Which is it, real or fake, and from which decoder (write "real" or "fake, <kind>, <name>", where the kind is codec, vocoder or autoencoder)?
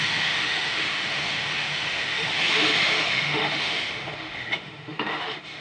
fake, autoencoder, DAC-VAE